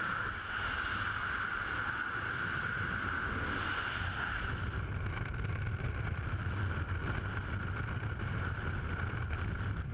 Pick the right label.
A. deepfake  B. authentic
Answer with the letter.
B